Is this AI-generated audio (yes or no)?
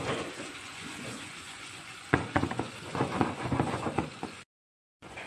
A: yes